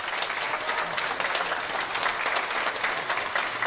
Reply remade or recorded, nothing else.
recorded